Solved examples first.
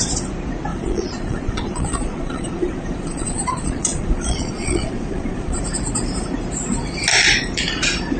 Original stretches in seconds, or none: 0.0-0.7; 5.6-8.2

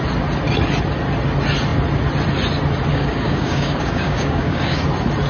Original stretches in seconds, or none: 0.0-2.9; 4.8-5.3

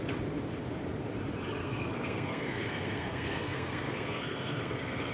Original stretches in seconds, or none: 0.0-1.6

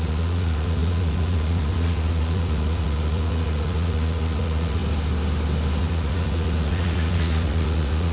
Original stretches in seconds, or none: 4.8-5.8